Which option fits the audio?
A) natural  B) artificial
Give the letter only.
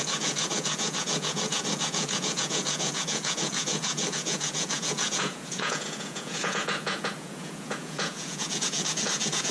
B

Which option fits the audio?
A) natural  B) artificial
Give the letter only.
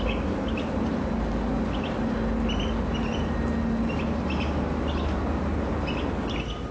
A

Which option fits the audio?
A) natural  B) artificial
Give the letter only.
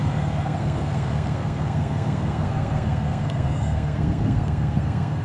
B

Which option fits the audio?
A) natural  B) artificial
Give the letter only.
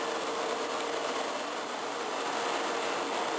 A